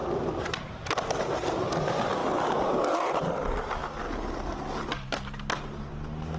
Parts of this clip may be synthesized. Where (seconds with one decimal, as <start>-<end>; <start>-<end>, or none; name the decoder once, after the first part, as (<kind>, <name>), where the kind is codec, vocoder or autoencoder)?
none